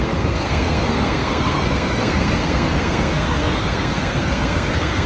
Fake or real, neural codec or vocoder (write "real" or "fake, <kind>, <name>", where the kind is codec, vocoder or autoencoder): fake, codec, SNAC